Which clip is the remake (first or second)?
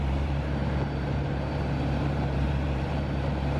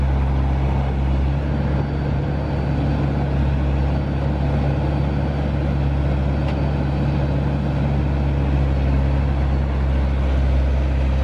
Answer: first